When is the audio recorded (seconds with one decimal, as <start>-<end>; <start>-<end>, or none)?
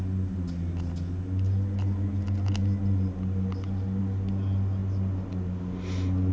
0.0-6.3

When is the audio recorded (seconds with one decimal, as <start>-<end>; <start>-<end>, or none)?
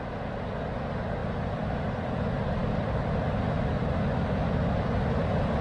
0.0-5.6